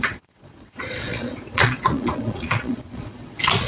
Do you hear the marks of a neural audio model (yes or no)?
yes